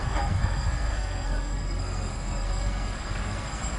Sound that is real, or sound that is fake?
fake